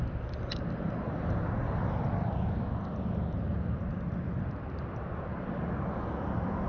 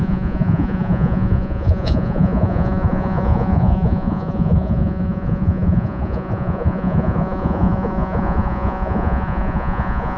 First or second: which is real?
first